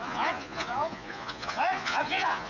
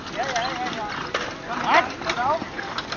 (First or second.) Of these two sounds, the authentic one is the second